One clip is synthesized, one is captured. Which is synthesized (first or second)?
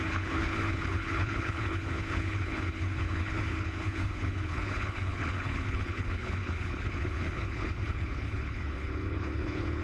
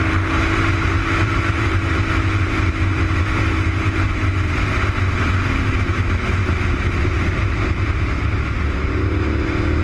first